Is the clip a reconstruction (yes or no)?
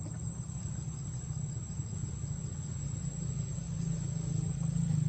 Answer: no